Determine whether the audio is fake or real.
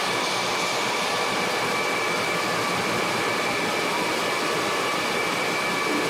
real